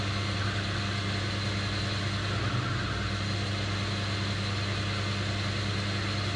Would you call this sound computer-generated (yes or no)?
no